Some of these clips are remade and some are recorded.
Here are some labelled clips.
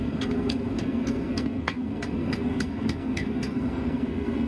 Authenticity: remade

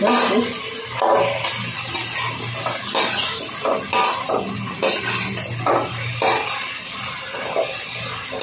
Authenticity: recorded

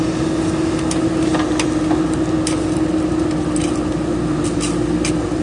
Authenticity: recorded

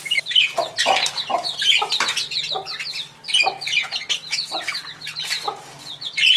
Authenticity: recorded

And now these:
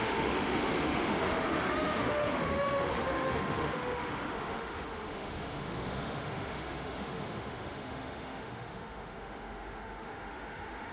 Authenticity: remade